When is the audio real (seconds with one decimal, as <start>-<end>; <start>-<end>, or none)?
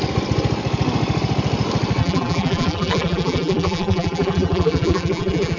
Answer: 0.0-2.0